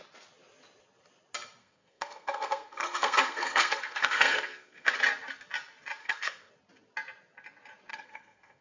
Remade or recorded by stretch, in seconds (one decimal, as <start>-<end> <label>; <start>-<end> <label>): 0.0-1.6 recorded; 1.6-4.9 remade; 4.9-6.0 recorded; 6.0-6.5 remade; 6.5-7.9 recorded; 7.9-8.6 remade